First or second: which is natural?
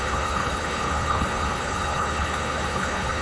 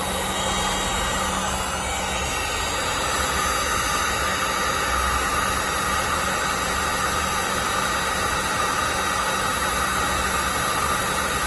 second